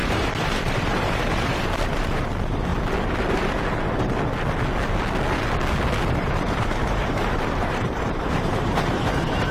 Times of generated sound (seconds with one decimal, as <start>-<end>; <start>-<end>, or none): 0.0-2.7; 6.1-9.5